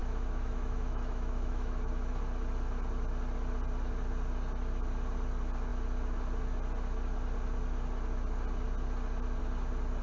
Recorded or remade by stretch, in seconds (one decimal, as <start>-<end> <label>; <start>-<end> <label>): 0.0-2.2 remade; 2.2-10.0 recorded